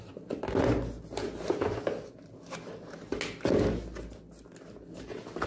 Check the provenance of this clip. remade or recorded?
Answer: recorded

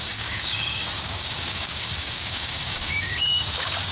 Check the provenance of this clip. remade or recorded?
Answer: remade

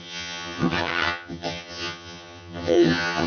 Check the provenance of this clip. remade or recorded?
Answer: remade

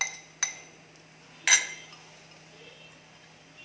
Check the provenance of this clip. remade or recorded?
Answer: recorded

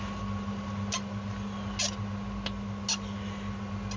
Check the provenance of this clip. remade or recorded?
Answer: recorded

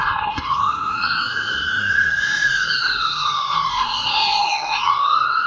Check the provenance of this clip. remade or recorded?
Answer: remade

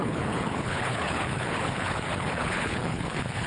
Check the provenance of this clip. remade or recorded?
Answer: remade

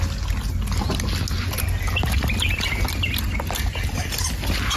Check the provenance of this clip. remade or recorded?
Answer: recorded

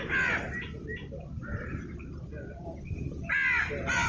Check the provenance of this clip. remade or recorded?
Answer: recorded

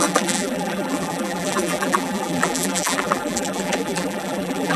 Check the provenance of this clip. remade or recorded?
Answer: remade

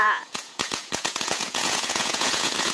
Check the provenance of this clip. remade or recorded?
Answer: remade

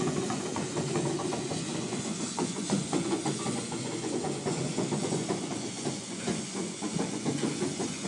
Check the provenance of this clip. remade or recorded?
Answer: remade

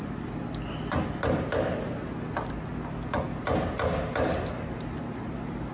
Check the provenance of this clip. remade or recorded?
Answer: recorded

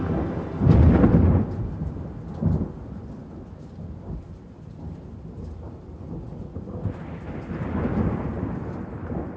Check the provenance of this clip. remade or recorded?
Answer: recorded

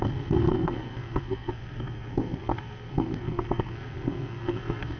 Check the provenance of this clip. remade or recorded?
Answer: remade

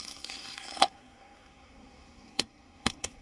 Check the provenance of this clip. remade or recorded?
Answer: remade